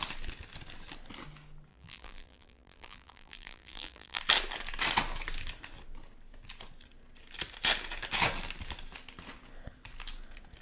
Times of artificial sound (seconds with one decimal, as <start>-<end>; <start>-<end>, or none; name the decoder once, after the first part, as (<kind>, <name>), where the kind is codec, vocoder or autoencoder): 1.7-4.2 (vocoder, BigVGAN v2)